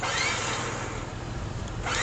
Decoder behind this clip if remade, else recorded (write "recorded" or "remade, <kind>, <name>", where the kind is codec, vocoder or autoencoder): recorded